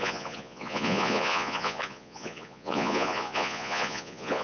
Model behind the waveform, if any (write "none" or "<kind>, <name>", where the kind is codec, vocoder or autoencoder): vocoder, Vocos